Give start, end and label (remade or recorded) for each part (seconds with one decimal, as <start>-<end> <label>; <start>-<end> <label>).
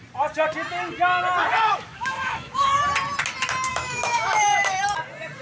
0.0-1.6 recorded; 1.6-2.7 remade; 2.7-3.7 recorded; 3.7-4.8 remade; 4.8-5.4 recorded